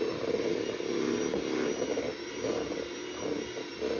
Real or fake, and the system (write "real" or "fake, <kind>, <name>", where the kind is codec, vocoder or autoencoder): real